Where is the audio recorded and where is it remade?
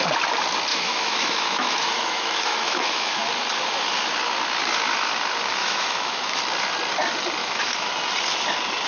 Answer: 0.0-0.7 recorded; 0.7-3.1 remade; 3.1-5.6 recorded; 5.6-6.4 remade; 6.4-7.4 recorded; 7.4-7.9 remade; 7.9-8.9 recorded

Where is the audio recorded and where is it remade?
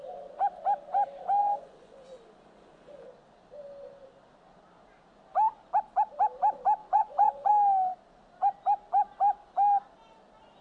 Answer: 0.0-1.4 recorded; 1.4-3.1 remade; 3.1-6.8 recorded; 6.8-7.5 remade; 7.5-10.6 recorded